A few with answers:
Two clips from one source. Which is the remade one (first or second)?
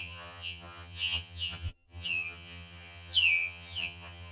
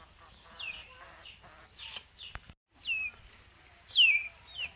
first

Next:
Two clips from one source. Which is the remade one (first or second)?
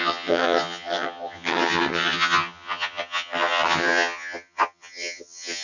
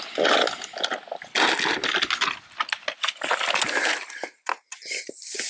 first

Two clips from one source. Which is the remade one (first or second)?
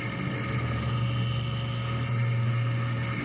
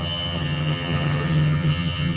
second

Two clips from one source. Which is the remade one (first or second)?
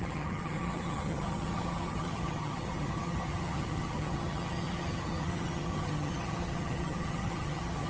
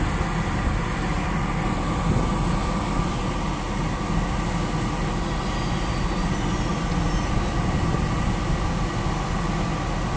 first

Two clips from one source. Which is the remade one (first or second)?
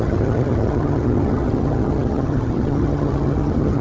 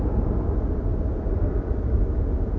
first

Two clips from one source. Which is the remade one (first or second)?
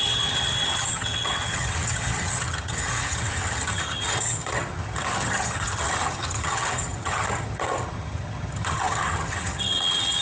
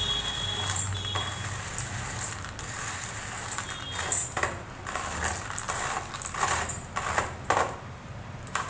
first